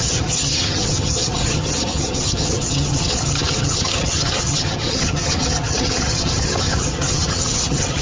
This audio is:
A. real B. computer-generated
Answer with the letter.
B